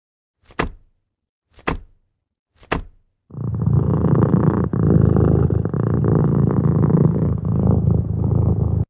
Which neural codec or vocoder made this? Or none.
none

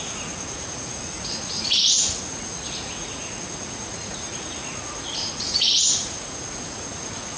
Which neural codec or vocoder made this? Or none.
vocoder, Vocos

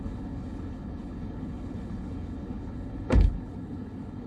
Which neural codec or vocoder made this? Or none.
codec, HILCodec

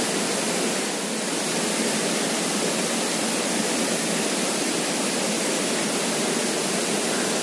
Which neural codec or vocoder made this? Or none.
none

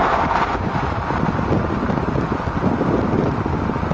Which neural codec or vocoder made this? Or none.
none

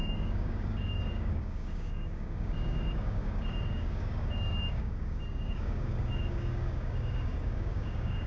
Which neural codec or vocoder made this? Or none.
codec, DAC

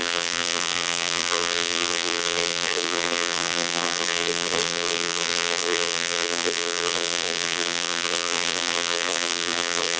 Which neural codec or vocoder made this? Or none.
vocoder, BigVGAN v2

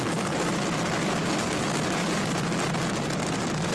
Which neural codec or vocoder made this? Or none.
none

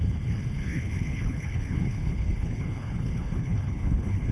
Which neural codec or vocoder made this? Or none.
codec, HILCodec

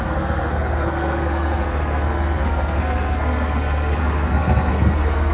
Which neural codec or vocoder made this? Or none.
codec, SNAC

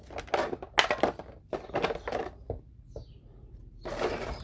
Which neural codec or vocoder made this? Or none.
none